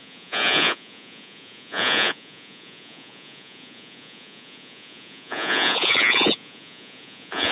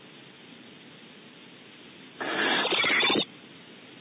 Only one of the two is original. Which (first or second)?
second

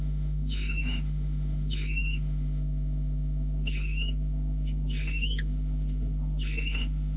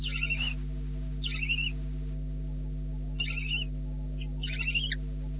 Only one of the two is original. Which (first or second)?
second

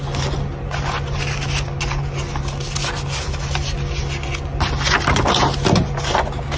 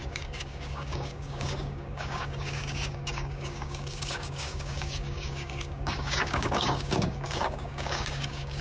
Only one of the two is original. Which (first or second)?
first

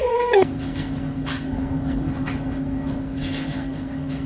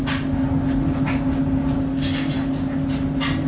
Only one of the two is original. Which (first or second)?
second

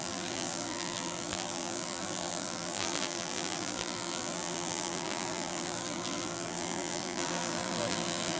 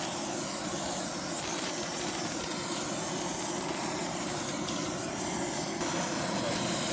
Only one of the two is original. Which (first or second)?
second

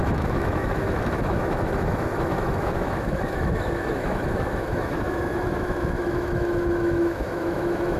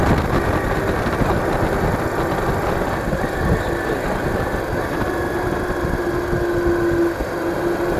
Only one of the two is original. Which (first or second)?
second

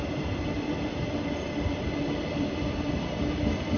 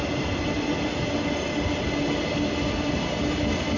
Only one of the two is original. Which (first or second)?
second